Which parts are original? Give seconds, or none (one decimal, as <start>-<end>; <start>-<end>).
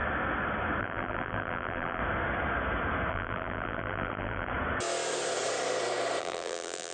0.0-0.8; 2.0-3.1; 4.5-6.2